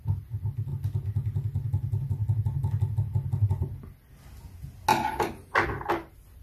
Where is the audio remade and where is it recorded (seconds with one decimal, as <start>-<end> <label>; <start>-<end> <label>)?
0.0-6.4 recorded